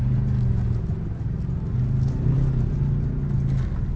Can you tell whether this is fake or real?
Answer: real